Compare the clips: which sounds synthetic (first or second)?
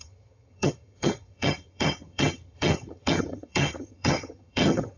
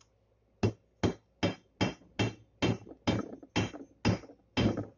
first